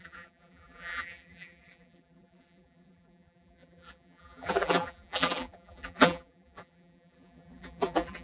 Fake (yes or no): yes